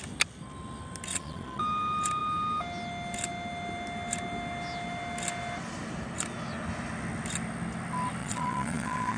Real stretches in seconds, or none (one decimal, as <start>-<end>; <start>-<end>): 0.0-1.1; 1.6-8.2